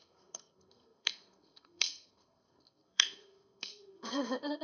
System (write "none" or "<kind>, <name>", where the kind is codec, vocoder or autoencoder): codec, SNAC